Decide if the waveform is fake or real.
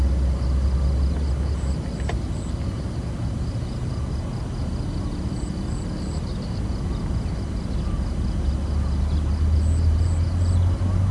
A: real